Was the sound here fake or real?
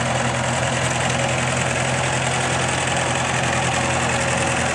real